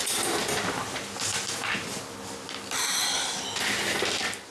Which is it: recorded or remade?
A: recorded